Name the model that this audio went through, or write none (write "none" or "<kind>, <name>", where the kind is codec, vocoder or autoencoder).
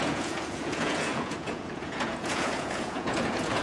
vocoder, Vocos